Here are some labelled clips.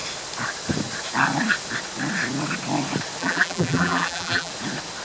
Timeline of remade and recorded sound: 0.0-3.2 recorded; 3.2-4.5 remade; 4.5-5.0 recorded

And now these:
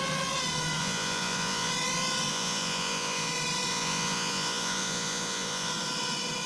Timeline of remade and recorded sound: 0.0-0.8 recorded; 0.8-1.7 remade; 1.7-2.3 recorded; 2.3-3.3 remade; 3.3-3.7 recorded; 3.7-5.7 remade; 5.7-6.5 recorded

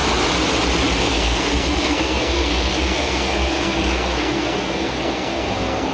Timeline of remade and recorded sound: 0.0-1.0 recorded; 1.0-5.9 remade

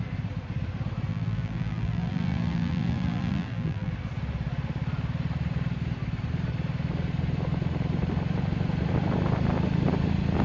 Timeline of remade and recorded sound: 0.0-1.1 recorded; 1.1-3.9 remade; 3.9-10.4 recorded

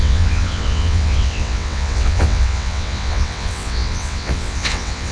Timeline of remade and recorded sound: 0.0-5.1 remade

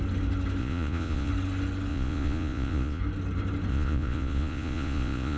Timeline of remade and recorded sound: 0.0-0.6 recorded; 0.6-1.3 remade; 1.3-1.9 recorded; 1.9-3.0 remade; 3.0-3.7 recorded; 3.7-5.4 remade

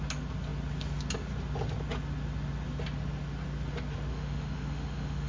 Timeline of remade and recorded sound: 0.0-4.1 recorded; 4.1-5.3 remade

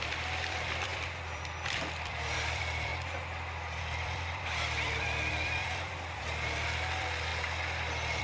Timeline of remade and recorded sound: 0.0-2.9 remade; 2.9-3.8 recorded; 3.8-7.3 remade; 7.3-8.2 recorded